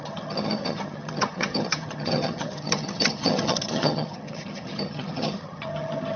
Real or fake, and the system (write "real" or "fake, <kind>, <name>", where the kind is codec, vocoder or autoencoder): fake, vocoder, HiFi-GAN